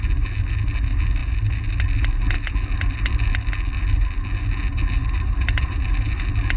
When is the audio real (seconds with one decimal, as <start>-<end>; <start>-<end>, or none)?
0.0-5.0